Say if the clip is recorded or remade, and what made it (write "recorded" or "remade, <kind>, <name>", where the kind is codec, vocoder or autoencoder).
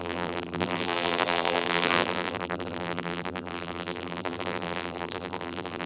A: remade, vocoder, BigVGAN v2